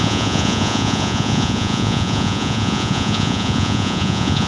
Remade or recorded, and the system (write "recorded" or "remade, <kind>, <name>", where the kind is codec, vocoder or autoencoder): remade, vocoder, Vocos